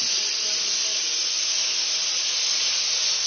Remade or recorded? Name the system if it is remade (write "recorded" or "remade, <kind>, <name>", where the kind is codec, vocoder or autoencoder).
recorded